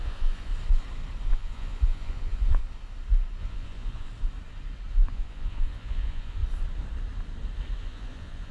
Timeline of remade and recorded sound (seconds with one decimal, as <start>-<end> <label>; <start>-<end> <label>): 0.0-0.5 remade; 0.5-1.3 recorded; 1.3-2.6 remade; 2.6-3.4 recorded; 3.4-4.1 remade; 4.1-4.9 recorded; 4.9-6.4 remade; 6.4-7.8 recorded; 7.8-8.5 remade